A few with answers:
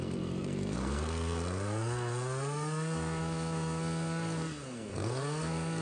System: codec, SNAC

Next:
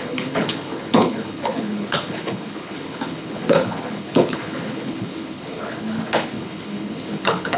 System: codec, HILCodec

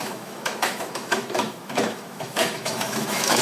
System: autoencoder, DAC-VAE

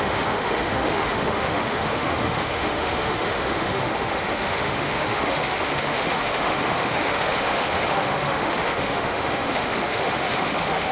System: autoencoder, DAC-VAE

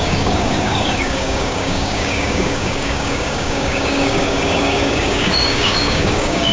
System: codec, DAC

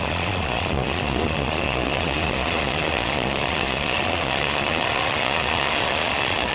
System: vocoder, Vocos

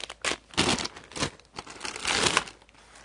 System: none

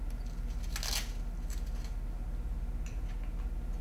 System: none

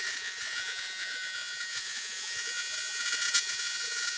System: vocoder, Vocos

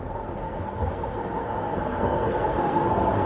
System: codec, SNAC